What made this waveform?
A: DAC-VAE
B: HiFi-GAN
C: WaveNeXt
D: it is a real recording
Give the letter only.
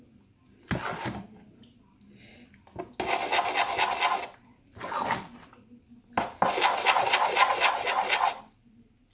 D